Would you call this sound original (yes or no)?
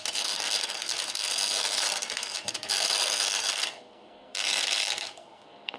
no